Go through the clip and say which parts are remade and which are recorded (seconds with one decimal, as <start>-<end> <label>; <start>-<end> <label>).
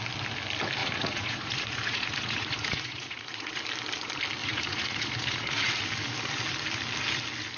0.0-0.8 recorded; 0.8-3.6 remade; 3.6-4.4 recorded; 4.4-5.7 remade; 5.7-7.6 recorded